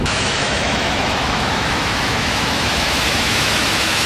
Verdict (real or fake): fake